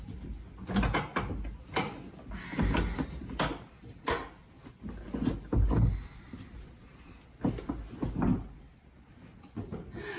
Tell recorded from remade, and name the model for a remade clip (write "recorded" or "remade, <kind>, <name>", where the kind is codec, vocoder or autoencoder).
recorded